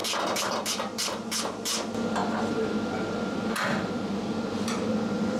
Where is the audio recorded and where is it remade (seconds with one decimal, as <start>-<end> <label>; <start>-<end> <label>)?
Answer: 0.0-0.6 recorded; 0.6-5.4 remade